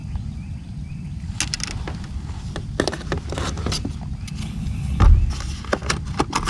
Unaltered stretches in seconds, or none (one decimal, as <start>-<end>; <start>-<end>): 0.0-4.4; 5.0-6.5